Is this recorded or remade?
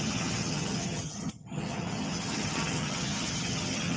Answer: remade